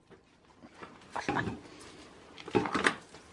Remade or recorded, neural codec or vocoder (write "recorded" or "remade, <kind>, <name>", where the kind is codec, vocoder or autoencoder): recorded